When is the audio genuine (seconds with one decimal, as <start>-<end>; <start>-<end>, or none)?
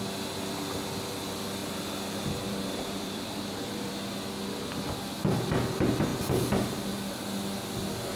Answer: 0.0-1.6; 3.9-8.2